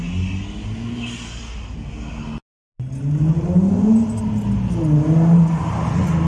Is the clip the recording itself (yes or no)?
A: yes